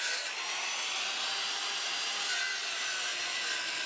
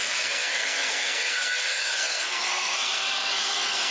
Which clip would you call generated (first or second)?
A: second